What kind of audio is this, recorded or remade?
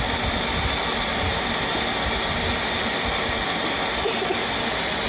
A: recorded